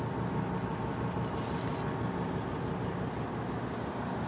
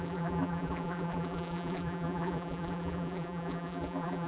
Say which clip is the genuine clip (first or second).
first